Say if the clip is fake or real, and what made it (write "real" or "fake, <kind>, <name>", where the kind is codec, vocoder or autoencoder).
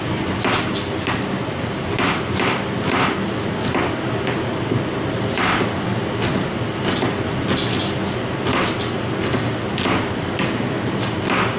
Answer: real